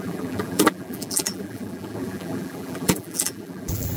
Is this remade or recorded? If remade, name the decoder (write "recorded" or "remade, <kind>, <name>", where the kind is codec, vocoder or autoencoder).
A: remade, vocoder, BigVGAN v2